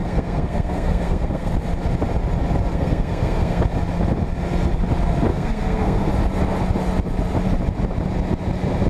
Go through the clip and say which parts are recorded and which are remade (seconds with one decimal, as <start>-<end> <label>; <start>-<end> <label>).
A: 0.0-1.5 remade; 1.5-2.7 recorded; 2.7-3.6 remade; 3.6-5.3 recorded; 5.3-6.1 remade; 6.1-8.9 recorded